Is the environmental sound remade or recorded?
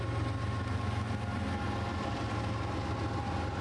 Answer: recorded